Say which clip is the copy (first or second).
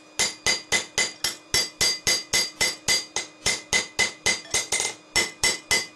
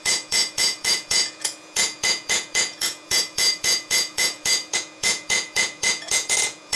second